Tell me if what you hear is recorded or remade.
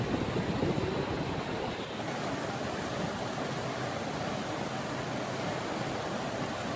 recorded